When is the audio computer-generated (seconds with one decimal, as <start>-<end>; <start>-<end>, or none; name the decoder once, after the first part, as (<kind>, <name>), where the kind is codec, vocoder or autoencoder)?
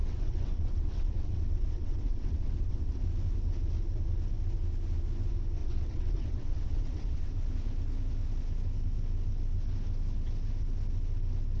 0.0-3.0 (vocoder, WaveNeXt); 5.6-7.3